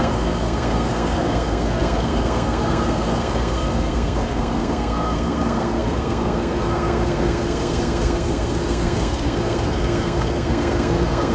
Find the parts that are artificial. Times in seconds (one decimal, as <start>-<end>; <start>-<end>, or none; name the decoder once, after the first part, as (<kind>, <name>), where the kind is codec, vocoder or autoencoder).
0.0-11.3 (codec, SNAC)